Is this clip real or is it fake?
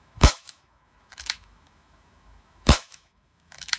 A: fake